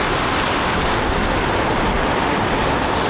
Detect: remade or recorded recorded